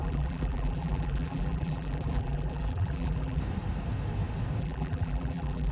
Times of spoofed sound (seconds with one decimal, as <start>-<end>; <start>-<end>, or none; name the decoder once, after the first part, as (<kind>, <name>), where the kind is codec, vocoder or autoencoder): 0.0-3.4 (vocoder, BigVGAN v2); 4.6-5.7